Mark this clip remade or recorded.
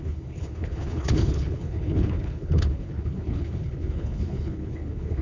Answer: remade